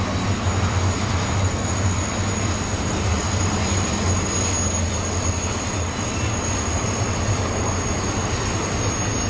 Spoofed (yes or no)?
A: no